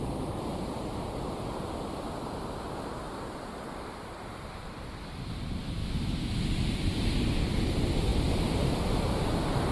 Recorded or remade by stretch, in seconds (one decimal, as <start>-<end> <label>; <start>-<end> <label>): 0.0-5.8 recorded; 5.8-6.4 remade; 6.4-9.7 recorded